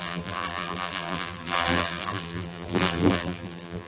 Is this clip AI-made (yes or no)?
yes